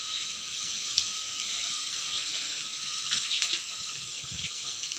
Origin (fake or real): fake